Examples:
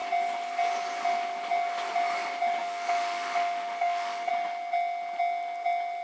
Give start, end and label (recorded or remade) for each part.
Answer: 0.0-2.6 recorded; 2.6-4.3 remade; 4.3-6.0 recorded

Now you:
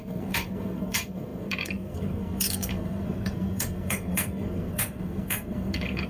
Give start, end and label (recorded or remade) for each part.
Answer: 0.0-6.1 remade

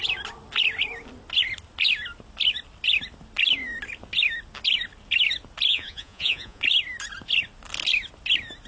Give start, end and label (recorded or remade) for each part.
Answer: 0.0-5.7 recorded; 5.7-6.6 remade; 6.6-8.7 recorded